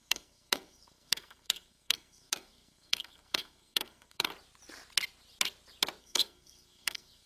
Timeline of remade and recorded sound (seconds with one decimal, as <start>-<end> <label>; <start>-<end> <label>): 0.0-4.3 remade; 4.3-6.0 recorded; 6.0-7.3 remade